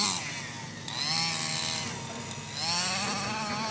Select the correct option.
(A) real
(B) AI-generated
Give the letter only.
A